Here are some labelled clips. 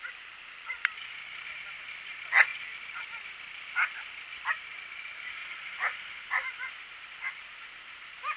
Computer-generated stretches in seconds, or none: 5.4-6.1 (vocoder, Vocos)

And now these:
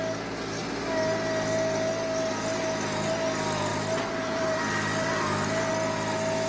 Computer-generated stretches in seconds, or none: 3.7-5.7 (vocoder, BigVGAN v2)

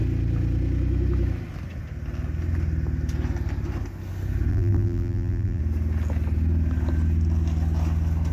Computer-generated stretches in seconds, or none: 4.5-5.6 (vocoder, BigVGAN v2)

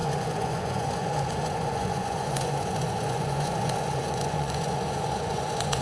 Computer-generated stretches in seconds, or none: 0.0-5.8 (vocoder, Vocos)

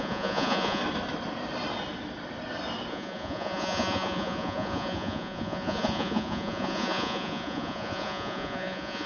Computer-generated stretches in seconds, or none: 0.0-0.8 (vocoder, Vocos); 2.9-9.1